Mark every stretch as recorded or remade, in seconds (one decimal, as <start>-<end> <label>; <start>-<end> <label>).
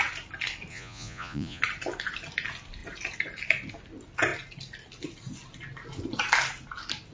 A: 0.0-0.7 recorded; 0.7-1.6 remade; 1.6-7.1 recorded